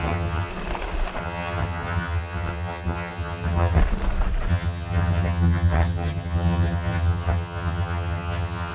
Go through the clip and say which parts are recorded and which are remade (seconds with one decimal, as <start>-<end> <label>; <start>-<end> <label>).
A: 0.0-0.5 remade; 0.5-1.2 recorded; 1.2-3.8 remade; 3.8-4.5 recorded; 4.5-8.7 remade